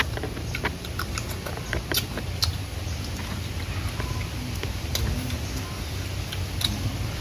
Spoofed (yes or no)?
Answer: no